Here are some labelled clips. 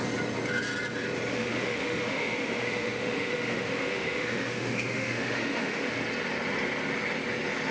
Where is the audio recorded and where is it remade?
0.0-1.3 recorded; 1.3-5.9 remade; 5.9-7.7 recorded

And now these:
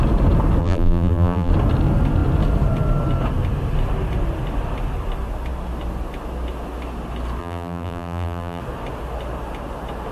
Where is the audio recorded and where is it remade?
0.0-0.6 recorded; 0.6-1.5 remade; 1.5-7.4 recorded; 7.4-8.6 remade; 8.6-10.1 recorded

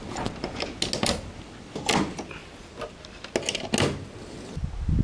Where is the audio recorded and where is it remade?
0.0-5.0 recorded

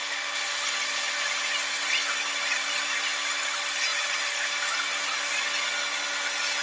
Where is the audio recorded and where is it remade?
0.0-6.6 recorded

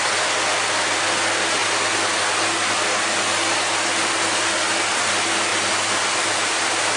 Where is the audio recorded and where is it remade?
0.0-7.0 recorded

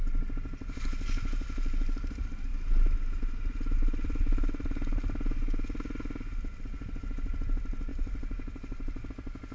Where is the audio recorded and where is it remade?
0.0-7.9 recorded; 7.9-9.1 remade; 9.1-9.5 recorded